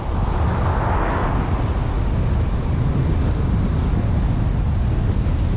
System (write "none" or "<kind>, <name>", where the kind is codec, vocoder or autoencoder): none